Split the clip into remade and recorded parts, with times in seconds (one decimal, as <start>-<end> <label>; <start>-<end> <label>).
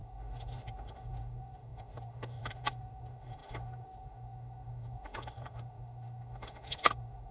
0.0-7.3 remade